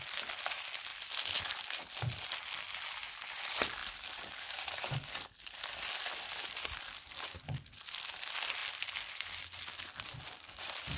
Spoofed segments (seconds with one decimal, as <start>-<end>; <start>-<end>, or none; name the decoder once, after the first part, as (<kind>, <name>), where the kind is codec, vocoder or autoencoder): none